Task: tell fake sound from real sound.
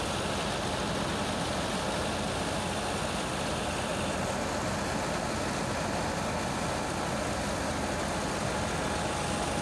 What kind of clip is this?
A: real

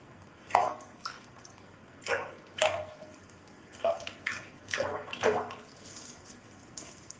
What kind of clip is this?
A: fake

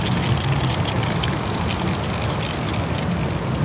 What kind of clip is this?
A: real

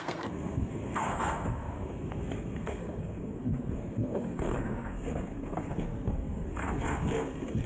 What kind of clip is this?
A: fake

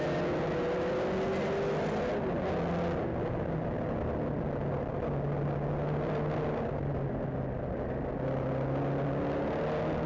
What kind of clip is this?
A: real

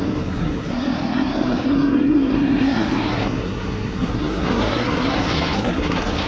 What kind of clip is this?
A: fake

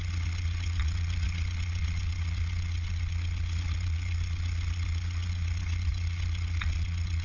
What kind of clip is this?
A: fake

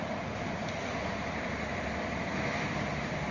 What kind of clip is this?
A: real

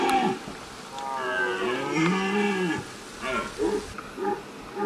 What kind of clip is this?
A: real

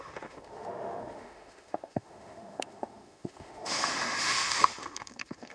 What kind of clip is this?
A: fake